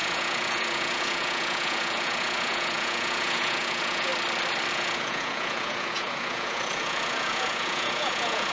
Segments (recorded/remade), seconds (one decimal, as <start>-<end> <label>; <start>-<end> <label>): 0.0-4.1 remade; 4.1-4.7 recorded; 4.7-8.5 remade